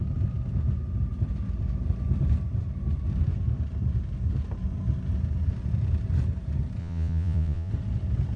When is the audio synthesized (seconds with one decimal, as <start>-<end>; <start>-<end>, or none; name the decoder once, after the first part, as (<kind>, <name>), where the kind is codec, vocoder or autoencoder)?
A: 6.8-7.7 (vocoder, Vocos)